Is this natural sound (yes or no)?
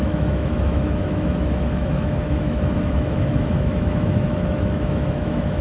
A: no